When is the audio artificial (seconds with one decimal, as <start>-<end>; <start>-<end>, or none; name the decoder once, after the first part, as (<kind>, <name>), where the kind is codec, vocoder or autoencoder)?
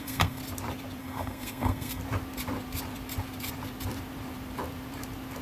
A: 0.0-0.4 (codec, SNAC); 1.0-2.0